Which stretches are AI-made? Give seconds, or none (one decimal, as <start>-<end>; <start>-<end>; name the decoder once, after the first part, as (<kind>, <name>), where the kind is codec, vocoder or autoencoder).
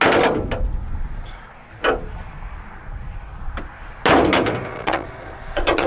4.7-5.9 (vocoder, Vocos)